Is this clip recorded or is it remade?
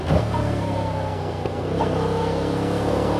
remade